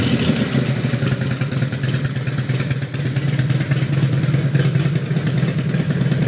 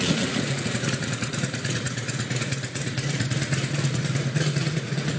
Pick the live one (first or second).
first